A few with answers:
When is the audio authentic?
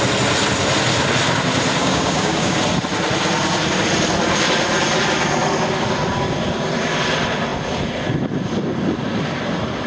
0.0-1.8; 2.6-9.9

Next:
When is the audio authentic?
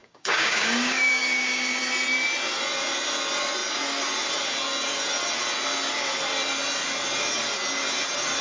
1.8-8.4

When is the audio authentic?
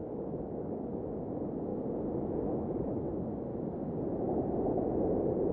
0.9-5.5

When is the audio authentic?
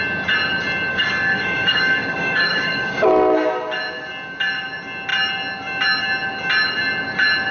0.0-0.9; 3.1-7.5